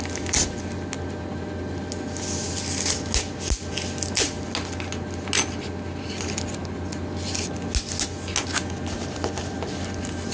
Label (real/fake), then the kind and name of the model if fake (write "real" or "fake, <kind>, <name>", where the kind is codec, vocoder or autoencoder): real